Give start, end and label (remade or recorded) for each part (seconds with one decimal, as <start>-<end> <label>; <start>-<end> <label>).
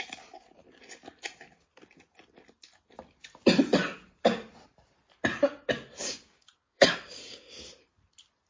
0.0-6.0 recorded; 6.0-7.7 remade; 7.7-8.5 recorded